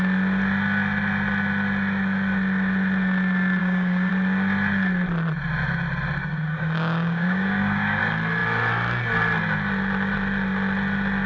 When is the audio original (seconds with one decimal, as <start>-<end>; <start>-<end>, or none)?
0.0-3.6; 4.1-6.2; 8.0-11.3